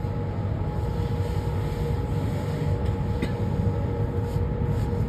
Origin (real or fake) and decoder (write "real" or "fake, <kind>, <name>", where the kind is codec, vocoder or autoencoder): real